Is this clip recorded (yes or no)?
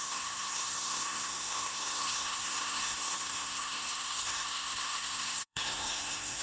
no